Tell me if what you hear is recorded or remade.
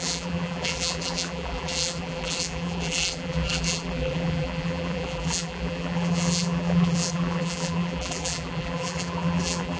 remade